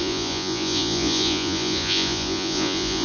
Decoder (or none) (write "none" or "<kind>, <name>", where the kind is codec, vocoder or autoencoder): vocoder, Vocos